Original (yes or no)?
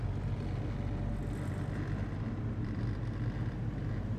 yes